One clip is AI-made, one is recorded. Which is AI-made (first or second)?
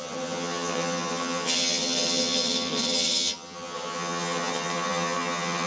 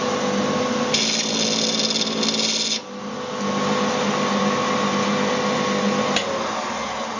first